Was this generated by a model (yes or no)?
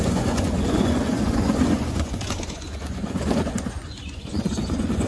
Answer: yes